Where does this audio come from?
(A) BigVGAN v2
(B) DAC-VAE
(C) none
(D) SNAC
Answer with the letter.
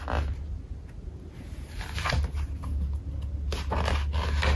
C